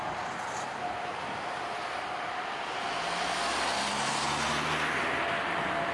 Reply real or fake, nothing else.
real